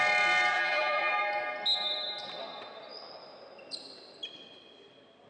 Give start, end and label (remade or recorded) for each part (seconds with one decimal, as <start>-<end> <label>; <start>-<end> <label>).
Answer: 0.0-0.5 recorded; 0.5-1.1 remade; 1.1-5.3 recorded